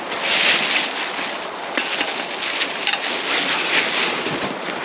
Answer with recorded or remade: recorded